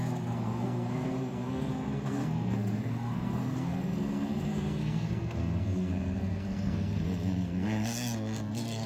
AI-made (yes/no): yes